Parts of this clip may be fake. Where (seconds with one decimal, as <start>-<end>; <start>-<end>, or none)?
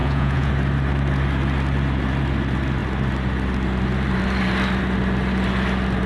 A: 0.0-0.5